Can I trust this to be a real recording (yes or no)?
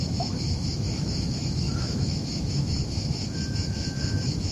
no